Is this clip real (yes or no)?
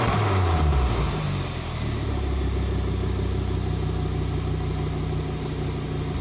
yes